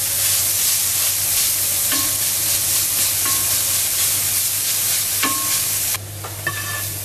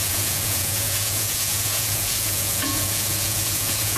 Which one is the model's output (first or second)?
second